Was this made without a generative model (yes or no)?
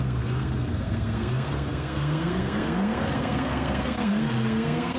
no